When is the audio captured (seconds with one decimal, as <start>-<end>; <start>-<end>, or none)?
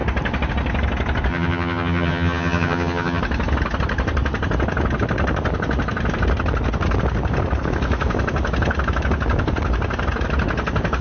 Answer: 0.0-1.3; 3.2-11.0